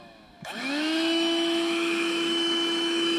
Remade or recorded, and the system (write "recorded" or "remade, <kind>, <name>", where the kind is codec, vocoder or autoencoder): remade, autoencoder, DAC-VAE